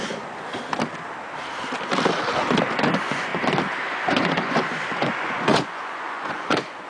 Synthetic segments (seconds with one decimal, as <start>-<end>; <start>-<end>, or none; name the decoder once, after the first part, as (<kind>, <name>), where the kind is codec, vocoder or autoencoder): 0.0-0.5 (vocoder, Vocos); 2.7-3.3; 3.9-6.9